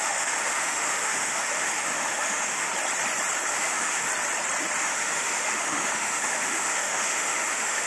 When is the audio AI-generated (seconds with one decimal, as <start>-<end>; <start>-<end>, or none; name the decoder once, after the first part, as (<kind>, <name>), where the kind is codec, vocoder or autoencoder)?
0.0-2.7 (autoencoder, DAC-VAE); 3.5-4.1; 4.8-7.9